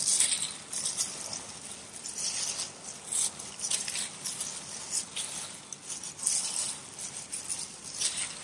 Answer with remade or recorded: recorded